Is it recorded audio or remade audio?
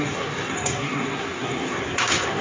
remade